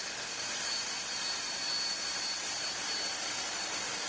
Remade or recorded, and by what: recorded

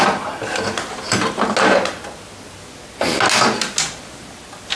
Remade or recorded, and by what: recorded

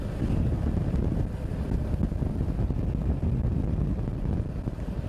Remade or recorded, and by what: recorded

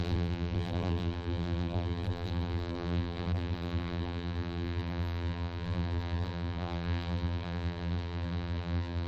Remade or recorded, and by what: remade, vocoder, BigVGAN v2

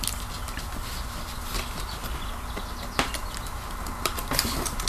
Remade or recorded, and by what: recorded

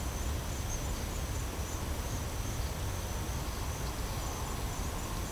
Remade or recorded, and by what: recorded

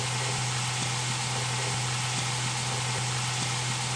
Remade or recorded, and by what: recorded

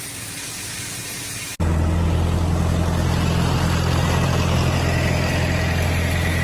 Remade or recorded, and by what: recorded